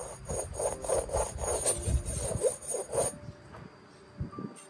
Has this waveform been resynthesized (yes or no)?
no